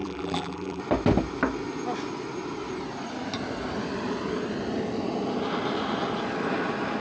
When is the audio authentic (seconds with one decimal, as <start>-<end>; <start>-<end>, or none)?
0.8-7.0